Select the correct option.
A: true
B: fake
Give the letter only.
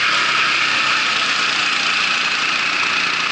A